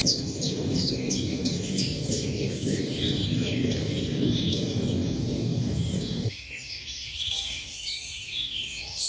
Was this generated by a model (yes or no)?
yes